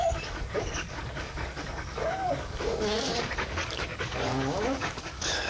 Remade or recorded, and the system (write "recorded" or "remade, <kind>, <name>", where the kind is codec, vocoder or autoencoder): remade, codec, DAC